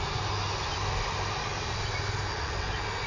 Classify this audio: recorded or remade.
recorded